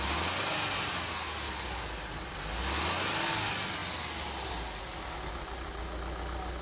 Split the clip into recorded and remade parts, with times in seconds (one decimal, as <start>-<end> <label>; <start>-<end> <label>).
0.0-6.6 recorded